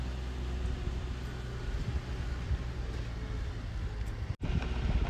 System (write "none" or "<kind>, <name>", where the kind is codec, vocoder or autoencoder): none